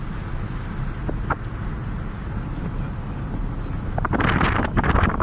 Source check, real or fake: real